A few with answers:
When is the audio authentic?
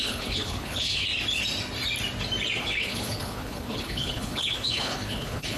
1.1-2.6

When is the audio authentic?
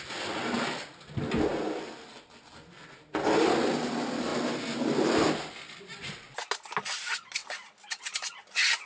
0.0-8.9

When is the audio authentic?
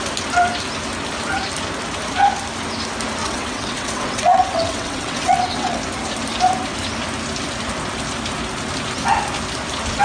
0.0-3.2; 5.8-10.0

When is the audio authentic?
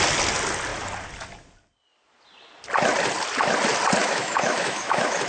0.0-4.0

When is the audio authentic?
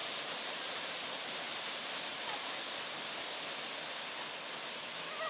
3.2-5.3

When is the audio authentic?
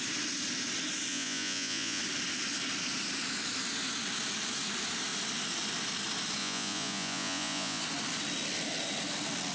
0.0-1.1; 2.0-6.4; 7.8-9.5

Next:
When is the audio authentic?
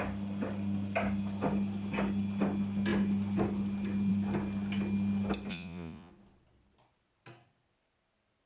0.0-5.5; 6.1-8.5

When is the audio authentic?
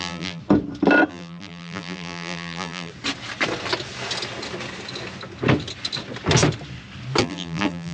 0.4-1.1; 2.9-7.2